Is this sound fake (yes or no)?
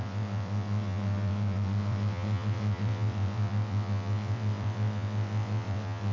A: yes